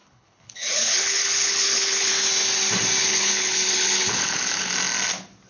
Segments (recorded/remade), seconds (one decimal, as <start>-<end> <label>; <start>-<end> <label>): 0.0-2.1 remade; 2.1-3.0 recorded; 3.0-4.7 remade; 4.7-5.5 recorded